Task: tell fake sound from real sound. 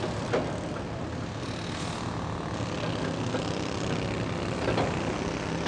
real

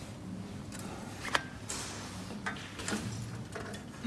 real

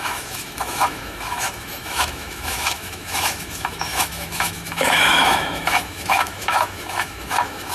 fake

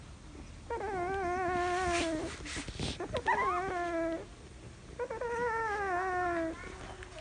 real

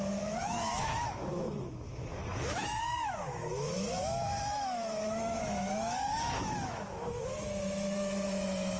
fake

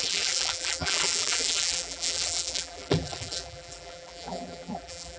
fake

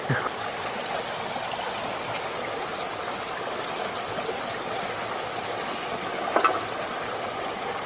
real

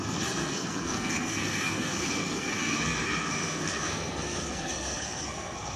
fake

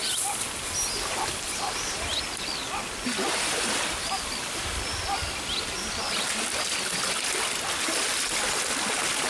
real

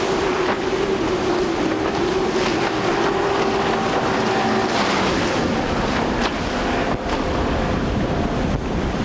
real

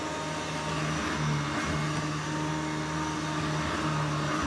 real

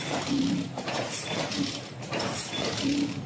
fake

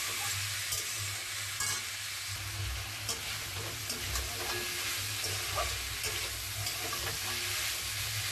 real